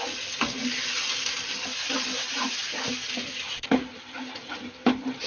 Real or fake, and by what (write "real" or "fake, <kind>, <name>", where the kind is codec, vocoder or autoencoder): real